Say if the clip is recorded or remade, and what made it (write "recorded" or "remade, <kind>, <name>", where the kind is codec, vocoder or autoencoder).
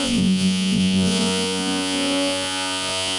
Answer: remade, vocoder, Vocos